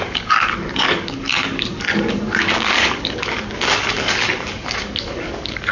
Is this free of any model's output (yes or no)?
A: no